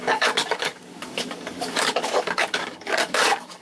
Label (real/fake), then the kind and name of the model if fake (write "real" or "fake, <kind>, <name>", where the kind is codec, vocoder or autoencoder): fake, codec, DAC